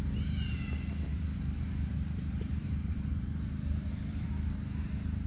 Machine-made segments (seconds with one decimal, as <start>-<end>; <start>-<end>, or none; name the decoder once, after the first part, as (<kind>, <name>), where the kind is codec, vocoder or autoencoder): 1.1-4.3 (vocoder, BigVGAN v2)